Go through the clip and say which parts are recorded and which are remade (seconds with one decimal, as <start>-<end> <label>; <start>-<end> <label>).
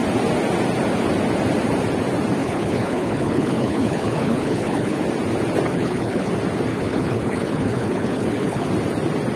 0.0-2.4 recorded; 2.4-5.0 remade; 5.0-5.7 recorded; 5.7-6.3 remade; 6.3-6.7 recorded; 6.7-8.7 remade; 8.7-9.4 recorded